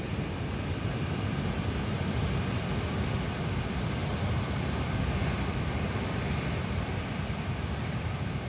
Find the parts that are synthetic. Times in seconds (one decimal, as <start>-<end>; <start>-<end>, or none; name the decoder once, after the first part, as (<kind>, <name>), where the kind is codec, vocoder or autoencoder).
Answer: none